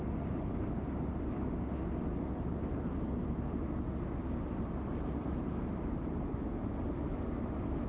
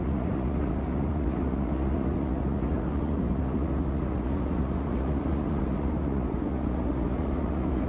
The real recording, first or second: first